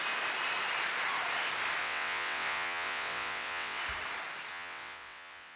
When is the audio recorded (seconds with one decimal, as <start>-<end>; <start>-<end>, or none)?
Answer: 0.0-1.8; 3.8-4.5